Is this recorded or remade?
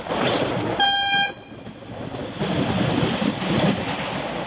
recorded